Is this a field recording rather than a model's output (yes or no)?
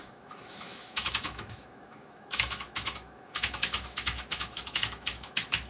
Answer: no